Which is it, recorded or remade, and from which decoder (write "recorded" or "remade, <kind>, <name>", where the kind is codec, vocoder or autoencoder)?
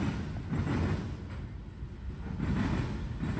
recorded